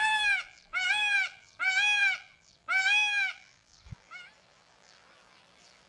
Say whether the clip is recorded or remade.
remade